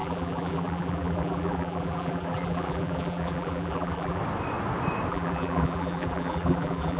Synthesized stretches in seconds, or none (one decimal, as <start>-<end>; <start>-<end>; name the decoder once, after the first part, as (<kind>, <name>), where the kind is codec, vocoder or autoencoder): 0.0-4.2 (vocoder, BigVGAN v2); 5.1-7.0